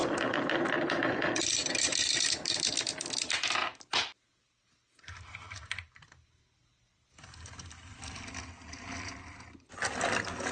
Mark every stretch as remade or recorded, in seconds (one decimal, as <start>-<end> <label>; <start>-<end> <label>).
0.0-1.0 remade; 1.0-1.6 recorded; 1.6-2.7 remade; 2.7-3.6 recorded; 3.6-8.3 remade; 8.3-10.5 recorded